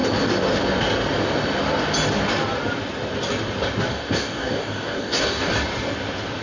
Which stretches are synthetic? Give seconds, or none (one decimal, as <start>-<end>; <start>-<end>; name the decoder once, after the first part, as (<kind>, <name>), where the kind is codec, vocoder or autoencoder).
3.9-5.5 (codec, DAC)